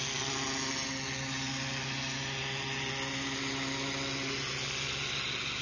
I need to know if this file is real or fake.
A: real